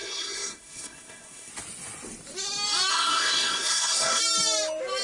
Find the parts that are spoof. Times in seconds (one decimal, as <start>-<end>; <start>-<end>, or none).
0.0-1.5; 2.9-4.2